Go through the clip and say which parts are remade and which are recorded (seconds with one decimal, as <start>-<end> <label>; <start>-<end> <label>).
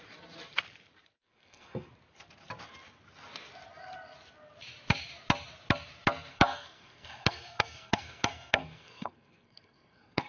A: 0.0-1.2 recorded; 1.2-1.9 remade; 1.9-6.3 recorded; 6.3-10.3 remade